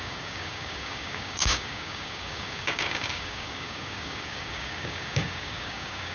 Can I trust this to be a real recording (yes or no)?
no